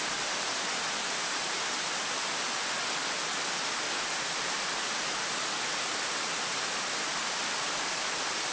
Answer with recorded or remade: recorded